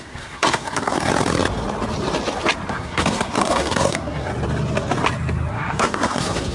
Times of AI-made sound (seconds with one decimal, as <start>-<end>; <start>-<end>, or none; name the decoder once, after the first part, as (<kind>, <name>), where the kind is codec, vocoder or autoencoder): 0.0-1.1 (codec, SNAC); 2.7-4.3; 5.5-6.5